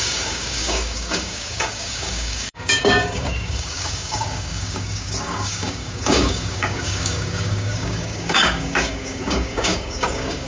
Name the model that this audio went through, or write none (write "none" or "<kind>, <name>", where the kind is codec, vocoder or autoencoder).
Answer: codec, DAC